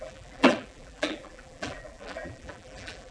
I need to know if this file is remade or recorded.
remade